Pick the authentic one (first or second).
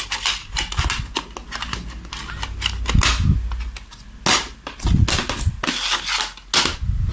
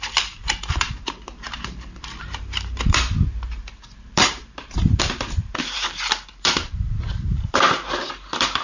first